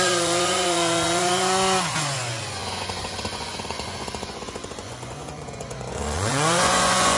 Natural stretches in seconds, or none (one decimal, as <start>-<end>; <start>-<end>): none